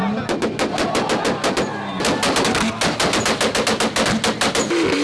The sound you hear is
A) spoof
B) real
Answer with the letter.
B